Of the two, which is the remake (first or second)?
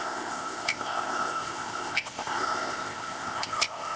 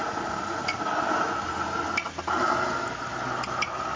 first